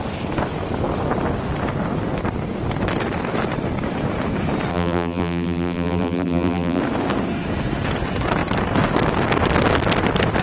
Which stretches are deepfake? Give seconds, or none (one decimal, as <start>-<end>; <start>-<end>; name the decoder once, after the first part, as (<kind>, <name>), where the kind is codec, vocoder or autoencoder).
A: 4.7-6.8 (vocoder, BigVGAN v2)